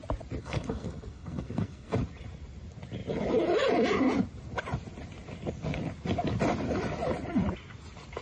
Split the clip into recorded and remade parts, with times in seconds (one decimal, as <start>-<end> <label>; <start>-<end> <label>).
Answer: 0.0-0.4 recorded; 0.4-2.0 remade; 2.0-8.2 recorded